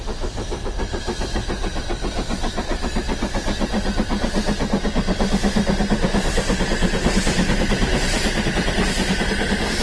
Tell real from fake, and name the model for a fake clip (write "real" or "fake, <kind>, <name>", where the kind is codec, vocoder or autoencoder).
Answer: real